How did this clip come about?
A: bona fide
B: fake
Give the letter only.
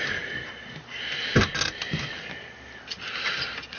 A